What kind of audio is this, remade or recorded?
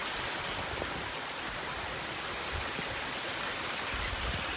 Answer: recorded